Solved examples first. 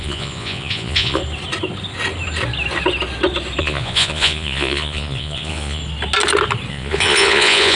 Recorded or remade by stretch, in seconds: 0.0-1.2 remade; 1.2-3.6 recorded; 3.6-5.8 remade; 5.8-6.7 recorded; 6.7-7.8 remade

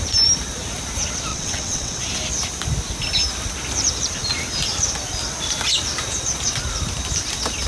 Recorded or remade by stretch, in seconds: 0.0-1.3 recorded; 1.3-2.0 remade; 2.0-7.7 recorded

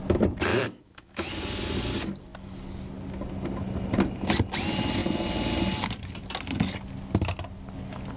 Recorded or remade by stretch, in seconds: 0.0-0.5 recorded; 0.5-1.3 remade; 1.3-8.2 recorded

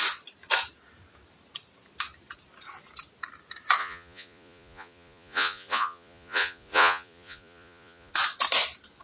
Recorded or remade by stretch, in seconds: 0.0-3.8 recorded; 3.8-8.1 remade; 8.1-9.0 recorded